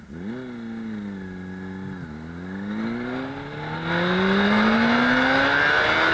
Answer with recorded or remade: recorded